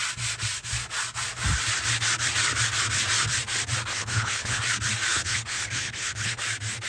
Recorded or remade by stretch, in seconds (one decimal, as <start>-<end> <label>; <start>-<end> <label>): 0.0-3.9 recorded; 3.9-4.6 remade; 4.6-5.1 recorded; 5.1-6.4 remade; 6.4-6.9 recorded